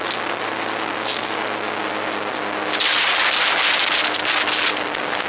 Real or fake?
real